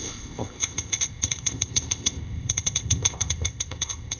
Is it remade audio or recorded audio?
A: remade